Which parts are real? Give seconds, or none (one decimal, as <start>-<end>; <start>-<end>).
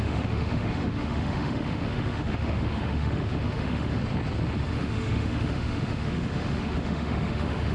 4.0-4.7